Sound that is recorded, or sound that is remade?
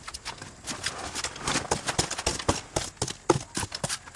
recorded